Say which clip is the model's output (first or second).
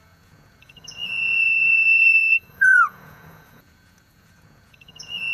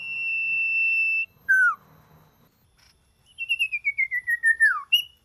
first